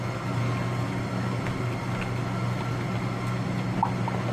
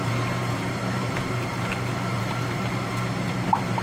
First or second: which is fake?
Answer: second